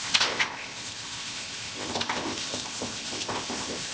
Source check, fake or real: fake